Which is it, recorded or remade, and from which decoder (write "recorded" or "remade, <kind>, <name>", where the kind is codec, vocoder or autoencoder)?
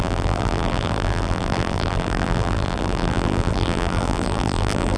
remade, vocoder, BigVGAN v2